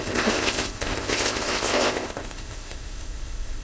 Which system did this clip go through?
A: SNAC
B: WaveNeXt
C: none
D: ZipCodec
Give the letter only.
D